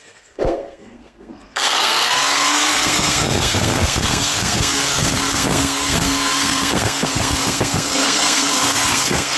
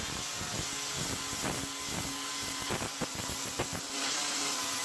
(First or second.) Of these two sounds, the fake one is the first